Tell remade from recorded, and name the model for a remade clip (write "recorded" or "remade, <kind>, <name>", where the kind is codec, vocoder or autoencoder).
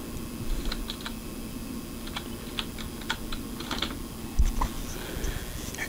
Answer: recorded